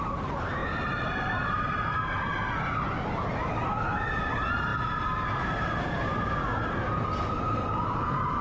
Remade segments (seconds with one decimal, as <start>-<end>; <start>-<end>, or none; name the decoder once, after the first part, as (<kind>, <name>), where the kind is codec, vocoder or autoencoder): none